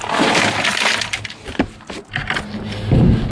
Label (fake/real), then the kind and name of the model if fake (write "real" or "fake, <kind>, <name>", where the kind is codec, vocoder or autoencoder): real